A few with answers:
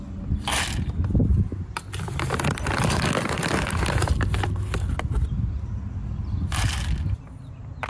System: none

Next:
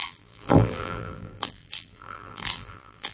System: vocoder, BigVGAN v2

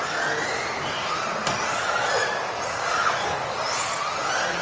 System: none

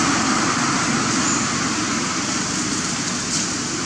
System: none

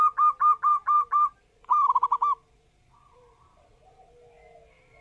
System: none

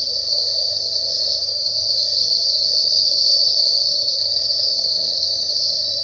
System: codec, SNAC